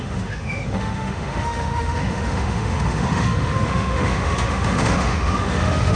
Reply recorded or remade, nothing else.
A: remade